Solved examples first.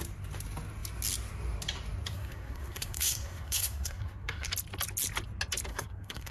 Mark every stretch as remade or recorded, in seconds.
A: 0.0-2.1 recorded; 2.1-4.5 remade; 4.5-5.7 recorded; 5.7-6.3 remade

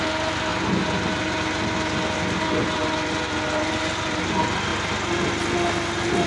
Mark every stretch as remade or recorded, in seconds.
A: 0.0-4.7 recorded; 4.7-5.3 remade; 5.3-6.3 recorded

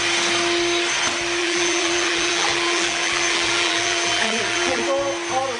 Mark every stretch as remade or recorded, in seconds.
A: 0.0-1.4 recorded; 1.4-4.8 remade; 4.8-5.6 recorded

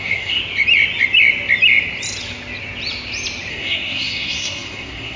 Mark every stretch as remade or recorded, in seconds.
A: 0.0-0.4 remade; 0.4-3.5 recorded; 3.5-5.2 remade

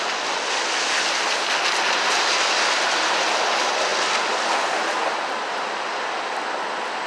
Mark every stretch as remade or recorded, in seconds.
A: 0.0-7.1 recorded